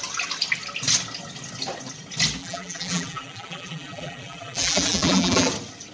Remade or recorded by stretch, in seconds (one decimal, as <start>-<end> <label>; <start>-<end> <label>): 0.0-2.4 recorded; 2.4-5.5 remade; 5.5-5.9 recorded